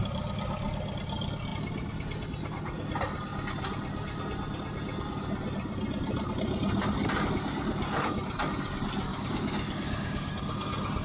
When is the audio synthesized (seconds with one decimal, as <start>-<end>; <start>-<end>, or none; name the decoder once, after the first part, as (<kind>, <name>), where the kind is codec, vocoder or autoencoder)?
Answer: 9.1-10.3 (codec, DAC)